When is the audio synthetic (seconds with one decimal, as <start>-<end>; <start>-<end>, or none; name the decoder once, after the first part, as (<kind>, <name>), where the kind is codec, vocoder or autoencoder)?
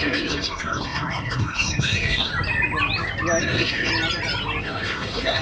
0.0-2.3 (codec, SNAC); 3.4-3.9; 4.6-5.4